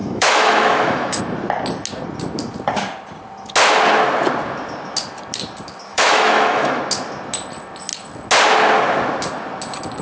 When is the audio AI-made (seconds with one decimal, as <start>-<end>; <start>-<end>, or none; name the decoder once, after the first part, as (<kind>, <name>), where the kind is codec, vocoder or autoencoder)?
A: 0.0-1.2 (autoencoder, DAC-VAE); 5.9-6.8